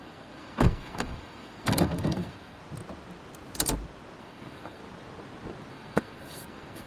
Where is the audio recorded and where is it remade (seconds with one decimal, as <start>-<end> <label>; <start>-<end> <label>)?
0.0-2.6 remade; 2.6-4.2 recorded; 4.2-4.8 remade; 4.8-5.7 recorded; 5.7-6.9 remade